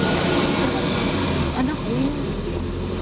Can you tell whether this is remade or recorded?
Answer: recorded